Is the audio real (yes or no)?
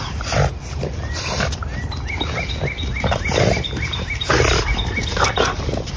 yes